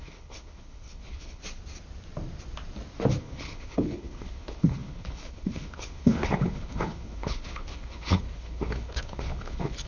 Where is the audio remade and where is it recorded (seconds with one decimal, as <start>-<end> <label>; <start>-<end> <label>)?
0.0-1.4 remade; 1.4-3.2 recorded; 3.2-9.9 remade